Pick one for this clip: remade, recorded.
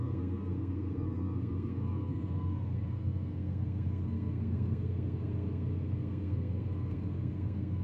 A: remade